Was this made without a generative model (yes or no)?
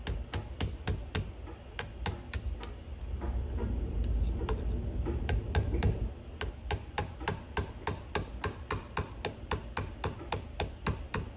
yes